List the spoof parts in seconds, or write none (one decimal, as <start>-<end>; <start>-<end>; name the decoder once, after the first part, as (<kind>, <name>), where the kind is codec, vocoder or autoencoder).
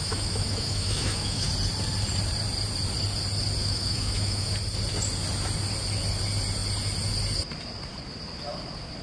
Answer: 0.0-1.5 (autoencoder, DAC-VAE); 3.6-4.5